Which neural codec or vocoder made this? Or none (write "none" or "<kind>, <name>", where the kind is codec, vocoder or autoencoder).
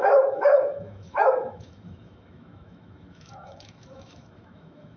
autoencoder, DAC-VAE